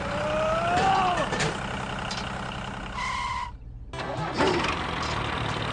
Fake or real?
real